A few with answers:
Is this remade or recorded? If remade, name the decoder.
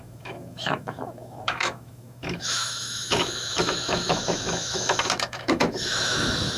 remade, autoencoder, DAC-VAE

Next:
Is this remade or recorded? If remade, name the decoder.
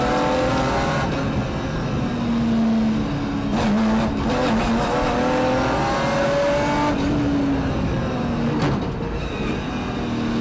recorded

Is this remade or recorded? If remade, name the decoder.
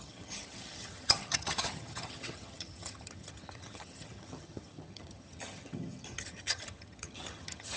remade, vocoder, HiFi-GAN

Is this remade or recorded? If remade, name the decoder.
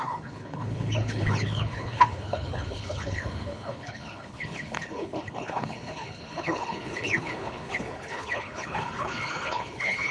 remade, codec, HILCodec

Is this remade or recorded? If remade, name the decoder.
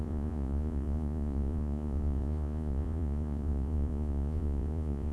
remade, vocoder, Vocos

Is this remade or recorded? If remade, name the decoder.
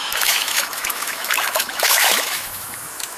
remade, autoencoder, DAC-VAE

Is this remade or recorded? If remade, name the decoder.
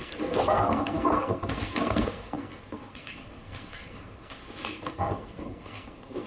remade, codec, SNAC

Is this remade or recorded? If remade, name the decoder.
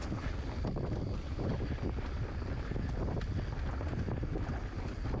recorded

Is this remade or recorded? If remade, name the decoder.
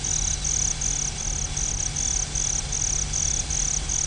recorded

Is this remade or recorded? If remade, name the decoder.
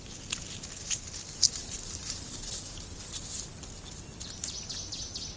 recorded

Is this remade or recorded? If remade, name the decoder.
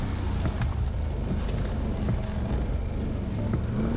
recorded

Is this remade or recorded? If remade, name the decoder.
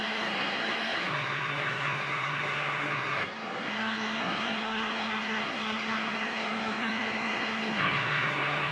remade, codec, SNAC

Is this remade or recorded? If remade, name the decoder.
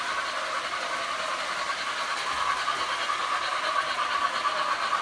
recorded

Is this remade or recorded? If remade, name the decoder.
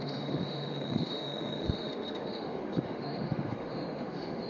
remade, autoencoder, DAC-VAE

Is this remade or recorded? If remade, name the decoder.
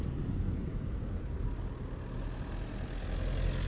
recorded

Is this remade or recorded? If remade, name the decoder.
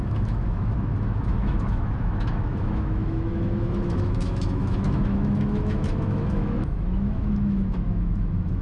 remade, autoencoder, DAC-VAE